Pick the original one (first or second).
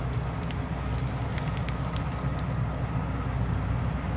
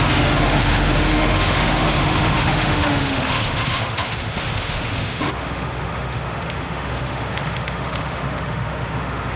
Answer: first